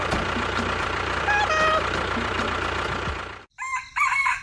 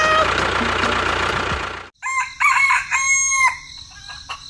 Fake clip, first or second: first